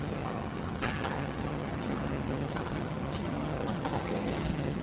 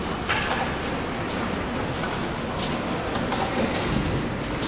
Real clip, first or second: second